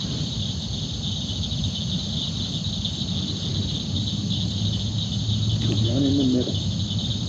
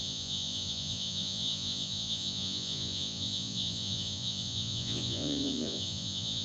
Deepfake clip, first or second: second